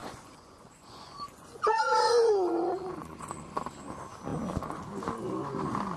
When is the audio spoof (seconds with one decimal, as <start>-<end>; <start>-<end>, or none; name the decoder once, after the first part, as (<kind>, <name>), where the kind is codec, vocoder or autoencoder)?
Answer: 0.0-3.6 (vocoder, Vocos)